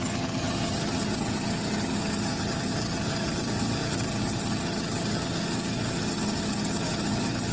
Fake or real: fake